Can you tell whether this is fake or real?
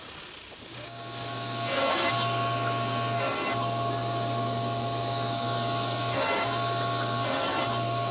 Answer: real